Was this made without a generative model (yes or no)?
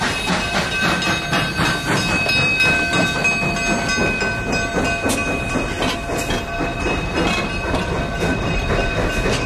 yes